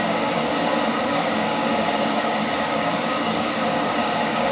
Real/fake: fake